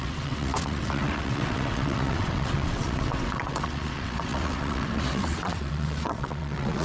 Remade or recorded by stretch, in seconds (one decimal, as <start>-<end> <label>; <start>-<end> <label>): 0.0-6.8 remade